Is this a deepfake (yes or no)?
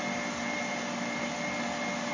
no